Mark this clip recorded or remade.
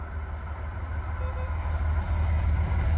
recorded